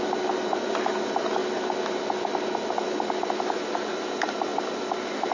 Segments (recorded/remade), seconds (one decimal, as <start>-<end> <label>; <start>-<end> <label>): 0.0-5.3 recorded